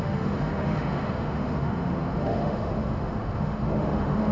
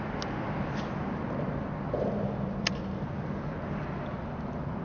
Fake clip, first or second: first